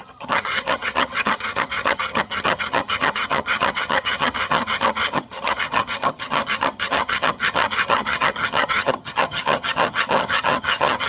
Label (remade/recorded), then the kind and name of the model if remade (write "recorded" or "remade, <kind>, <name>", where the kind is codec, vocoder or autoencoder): remade, vocoder, HiFi-GAN